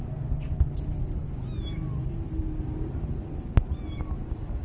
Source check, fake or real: real